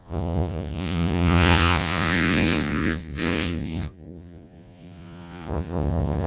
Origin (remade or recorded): remade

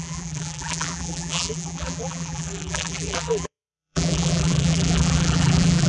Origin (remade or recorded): remade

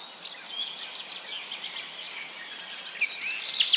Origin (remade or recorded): recorded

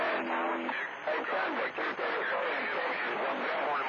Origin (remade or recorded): recorded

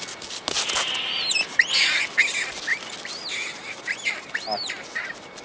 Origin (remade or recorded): recorded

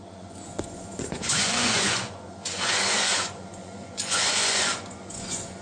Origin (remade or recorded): remade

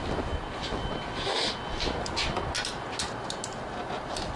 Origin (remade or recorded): recorded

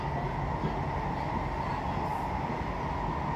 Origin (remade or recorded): recorded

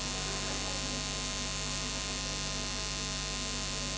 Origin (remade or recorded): recorded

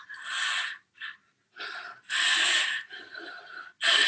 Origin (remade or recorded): recorded